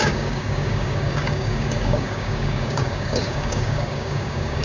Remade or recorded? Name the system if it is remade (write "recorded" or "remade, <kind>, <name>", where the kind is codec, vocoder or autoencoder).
remade, codec, DAC